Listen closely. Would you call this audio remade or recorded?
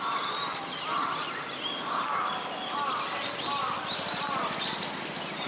recorded